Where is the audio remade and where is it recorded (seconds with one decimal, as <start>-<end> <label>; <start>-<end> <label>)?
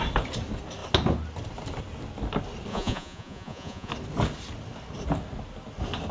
0.0-2.7 recorded; 2.7-3.9 remade; 3.9-6.1 recorded